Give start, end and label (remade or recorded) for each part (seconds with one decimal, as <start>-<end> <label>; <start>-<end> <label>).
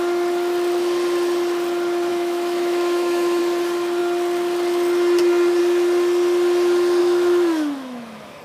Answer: 0.0-2.1 recorded; 2.1-3.4 remade; 3.4-7.0 recorded; 7.0-8.4 remade